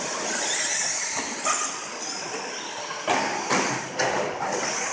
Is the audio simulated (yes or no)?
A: no